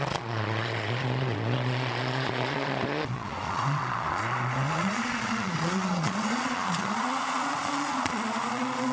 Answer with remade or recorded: remade